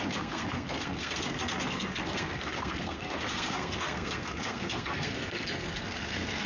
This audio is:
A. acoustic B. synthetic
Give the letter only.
B